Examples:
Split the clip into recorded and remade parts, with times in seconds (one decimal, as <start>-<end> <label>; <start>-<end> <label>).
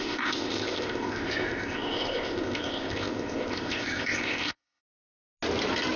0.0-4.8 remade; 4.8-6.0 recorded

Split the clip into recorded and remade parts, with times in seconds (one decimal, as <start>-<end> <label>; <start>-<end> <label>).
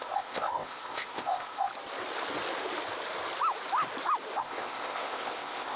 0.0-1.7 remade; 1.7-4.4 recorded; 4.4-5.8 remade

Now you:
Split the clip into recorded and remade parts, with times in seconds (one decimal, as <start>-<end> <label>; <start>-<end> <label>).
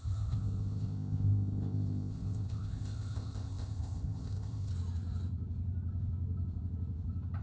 0.0-4.7 remade; 4.7-7.4 recorded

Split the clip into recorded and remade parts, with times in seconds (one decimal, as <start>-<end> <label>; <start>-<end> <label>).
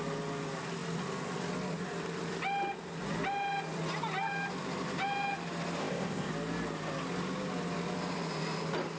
0.0-5.8 recorded; 5.8-6.3 remade; 6.3-9.0 recorded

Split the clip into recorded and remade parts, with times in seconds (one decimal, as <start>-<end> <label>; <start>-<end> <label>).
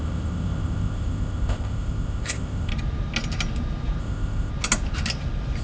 0.0-2.7 remade; 2.7-4.0 recorded; 4.0-4.5 remade; 4.5-5.6 recorded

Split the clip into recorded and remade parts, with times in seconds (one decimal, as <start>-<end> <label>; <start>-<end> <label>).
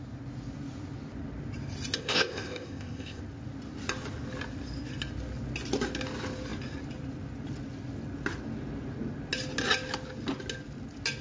0.0-2.0 recorded; 2.0-3.2 remade; 3.2-11.2 recorded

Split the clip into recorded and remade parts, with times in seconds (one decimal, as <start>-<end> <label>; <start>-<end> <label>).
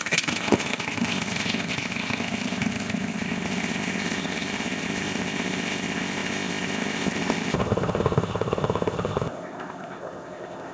0.0-10.7 remade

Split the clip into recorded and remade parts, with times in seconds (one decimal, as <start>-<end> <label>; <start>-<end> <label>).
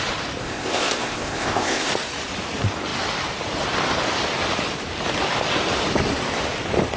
0.0-0.4 recorded; 0.4-1.9 remade; 1.9-7.0 recorded